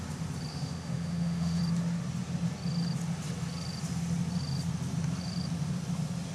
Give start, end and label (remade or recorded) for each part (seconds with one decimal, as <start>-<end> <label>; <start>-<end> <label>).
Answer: 0.0-0.5 recorded; 0.5-1.6 remade; 1.6-6.3 recorded